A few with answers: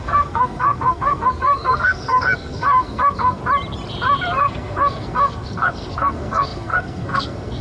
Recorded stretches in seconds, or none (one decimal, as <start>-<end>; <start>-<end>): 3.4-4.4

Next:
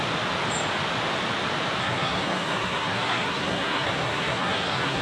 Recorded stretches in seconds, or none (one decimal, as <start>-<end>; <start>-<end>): 0.0-1.8

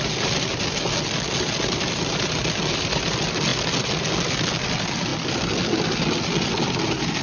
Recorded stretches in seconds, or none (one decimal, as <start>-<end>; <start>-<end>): 0.0-7.2